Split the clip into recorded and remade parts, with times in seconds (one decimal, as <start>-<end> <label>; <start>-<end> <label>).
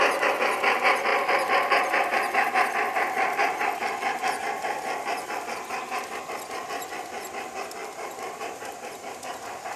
0.0-7.8 recorded; 7.8-9.8 remade